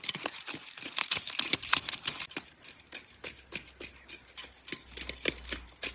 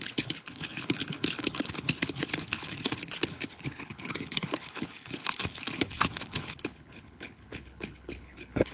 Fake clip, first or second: second